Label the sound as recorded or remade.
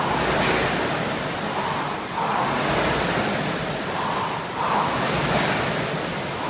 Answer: recorded